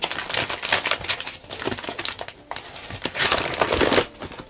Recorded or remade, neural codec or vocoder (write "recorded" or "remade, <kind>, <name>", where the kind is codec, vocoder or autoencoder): recorded